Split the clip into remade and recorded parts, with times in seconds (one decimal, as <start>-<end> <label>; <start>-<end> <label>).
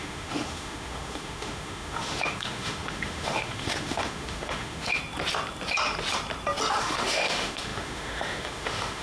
0.0-5.0 remade; 5.0-6.8 recorded; 6.8-9.0 remade